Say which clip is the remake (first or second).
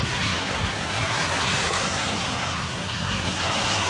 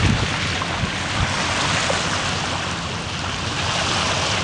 first